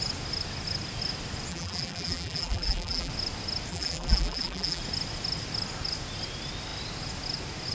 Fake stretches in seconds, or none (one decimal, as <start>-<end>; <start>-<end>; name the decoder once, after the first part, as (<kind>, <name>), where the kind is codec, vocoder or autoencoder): 1.5-3.1 (vocoder, BigVGAN v2); 3.7-4.8